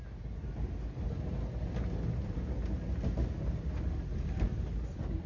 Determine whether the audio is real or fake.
real